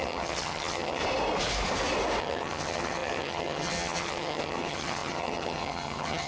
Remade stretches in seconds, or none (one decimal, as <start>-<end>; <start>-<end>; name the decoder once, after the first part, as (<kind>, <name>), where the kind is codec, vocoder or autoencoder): 0.0-1.0 (vocoder, HiFi-GAN); 2.2-6.3